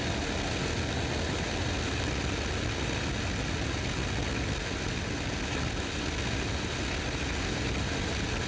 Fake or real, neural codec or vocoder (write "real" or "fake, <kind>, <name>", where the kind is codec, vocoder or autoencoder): real